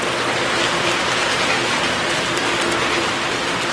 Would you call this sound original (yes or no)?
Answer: yes